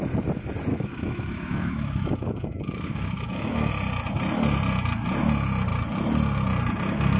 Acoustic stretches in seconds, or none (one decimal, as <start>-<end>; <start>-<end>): 0.0-0.7; 3.7-7.2